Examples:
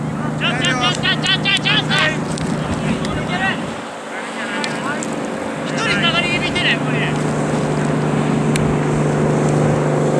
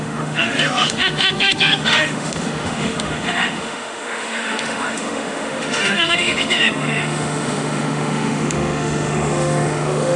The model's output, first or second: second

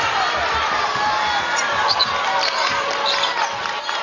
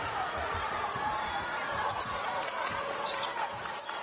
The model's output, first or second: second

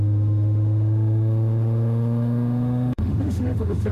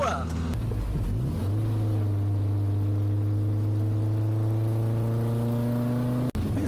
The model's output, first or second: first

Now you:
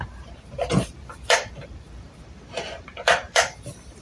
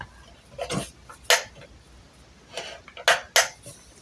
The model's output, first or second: first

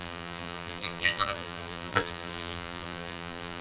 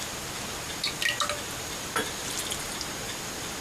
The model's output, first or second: first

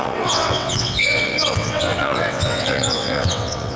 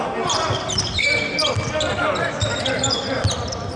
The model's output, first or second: first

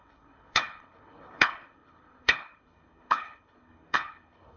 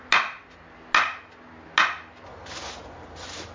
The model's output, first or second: first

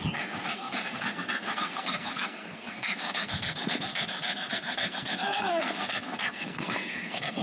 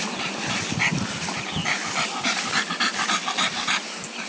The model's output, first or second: first